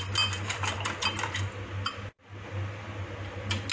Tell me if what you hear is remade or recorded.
recorded